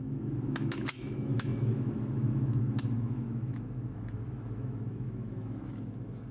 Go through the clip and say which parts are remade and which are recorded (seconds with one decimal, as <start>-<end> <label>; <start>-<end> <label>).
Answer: 0.0-6.3 remade